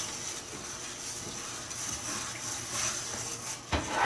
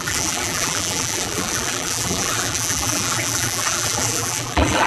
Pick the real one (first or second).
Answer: first